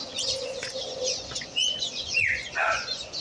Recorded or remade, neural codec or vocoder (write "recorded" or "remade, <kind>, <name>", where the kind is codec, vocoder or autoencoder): remade, vocoder, Vocos